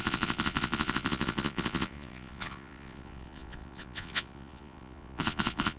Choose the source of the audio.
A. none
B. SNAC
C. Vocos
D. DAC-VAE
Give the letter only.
C